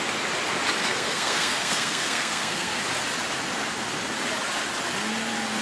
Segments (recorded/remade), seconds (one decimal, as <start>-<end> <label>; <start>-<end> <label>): 0.0-0.8 recorded; 0.8-2.8 remade; 2.8-5.6 recorded